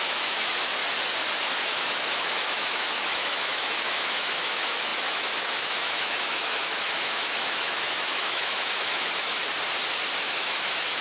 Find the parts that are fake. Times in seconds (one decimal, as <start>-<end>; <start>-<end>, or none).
0.0-0.8; 1.4-9.4; 10.2-11.0